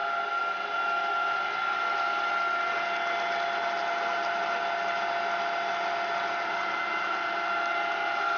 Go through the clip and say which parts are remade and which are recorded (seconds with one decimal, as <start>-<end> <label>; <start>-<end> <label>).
0.0-8.4 recorded